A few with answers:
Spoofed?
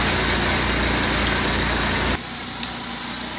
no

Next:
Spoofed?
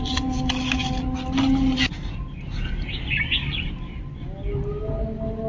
no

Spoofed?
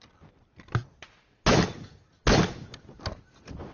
no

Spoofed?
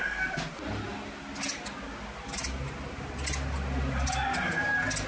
no